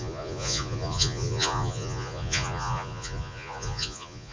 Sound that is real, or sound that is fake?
fake